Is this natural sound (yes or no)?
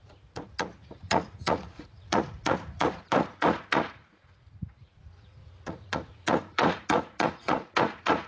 no